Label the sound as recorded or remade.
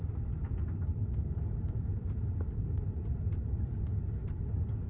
recorded